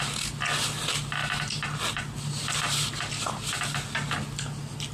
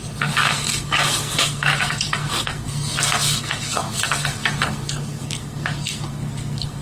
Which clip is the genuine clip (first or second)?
first